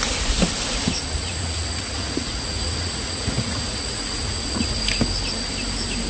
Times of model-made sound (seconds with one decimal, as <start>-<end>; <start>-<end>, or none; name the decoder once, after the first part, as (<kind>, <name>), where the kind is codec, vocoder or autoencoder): 1.2-4.9 (vocoder, Vocos)